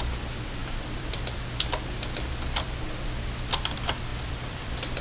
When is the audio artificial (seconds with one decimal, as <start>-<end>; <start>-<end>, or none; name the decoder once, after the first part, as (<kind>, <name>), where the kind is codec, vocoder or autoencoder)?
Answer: 0.6-1.2 (vocoder, BigVGAN v2); 4.1-5.0